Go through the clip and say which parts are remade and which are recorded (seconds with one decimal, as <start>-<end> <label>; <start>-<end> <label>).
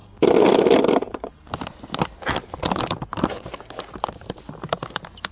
0.0-5.3 recorded